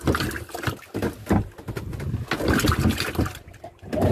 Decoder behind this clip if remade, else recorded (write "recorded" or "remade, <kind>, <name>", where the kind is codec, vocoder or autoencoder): recorded